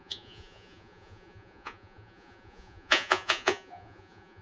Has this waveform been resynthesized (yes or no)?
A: yes